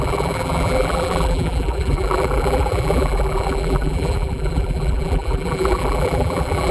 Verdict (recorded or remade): remade